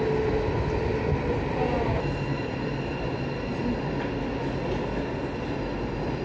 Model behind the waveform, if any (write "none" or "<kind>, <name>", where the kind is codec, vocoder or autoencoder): none